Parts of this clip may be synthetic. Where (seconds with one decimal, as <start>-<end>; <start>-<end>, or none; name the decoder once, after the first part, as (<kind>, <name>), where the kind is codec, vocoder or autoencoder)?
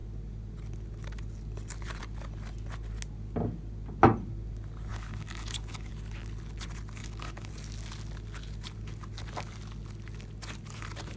4.9-5.9 (codec, DAC); 7.0-7.5